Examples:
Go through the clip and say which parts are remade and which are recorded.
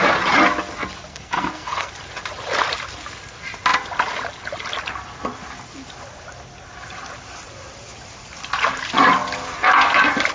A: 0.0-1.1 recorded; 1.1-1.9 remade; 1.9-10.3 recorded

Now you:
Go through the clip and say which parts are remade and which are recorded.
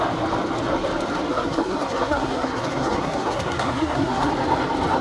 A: 0.0-1.3 recorded; 1.3-4.3 remade; 4.3-5.0 recorded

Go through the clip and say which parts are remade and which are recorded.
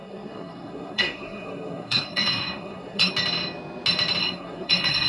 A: 0.0-3.1 remade; 3.1-4.2 recorded; 4.2-5.1 remade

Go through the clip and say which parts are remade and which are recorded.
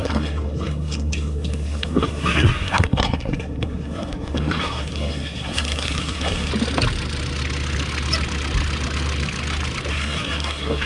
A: 0.0-6.5 remade; 6.5-9.9 recorded; 9.9-10.9 remade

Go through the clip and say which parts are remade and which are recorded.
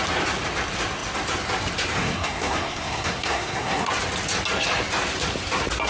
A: 0.0-2.0 recorded; 2.0-3.9 remade; 3.9-5.9 recorded